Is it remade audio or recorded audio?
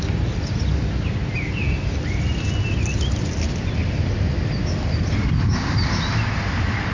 recorded